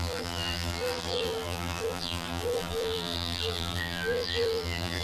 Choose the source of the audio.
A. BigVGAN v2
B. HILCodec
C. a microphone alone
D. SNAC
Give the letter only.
A